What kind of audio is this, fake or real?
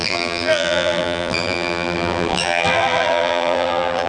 fake